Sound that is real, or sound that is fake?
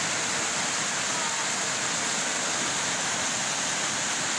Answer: real